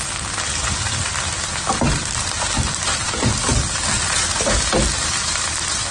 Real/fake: fake